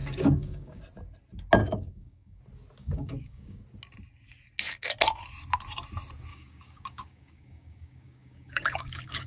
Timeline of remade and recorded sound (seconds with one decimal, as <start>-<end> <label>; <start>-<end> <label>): 0.0-0.8 remade; 0.8-1.6 recorded; 1.6-2.4 remade; 2.4-2.8 recorded; 2.8-3.6 remade; 3.6-6.3 recorded; 6.3-9.3 remade